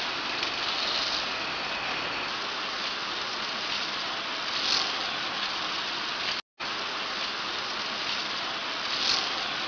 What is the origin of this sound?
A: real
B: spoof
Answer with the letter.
A